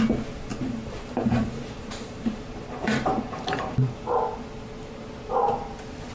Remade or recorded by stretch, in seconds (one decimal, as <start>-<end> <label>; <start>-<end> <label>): 0.0-0.5 recorded; 0.5-4.2 remade; 4.2-6.1 recorded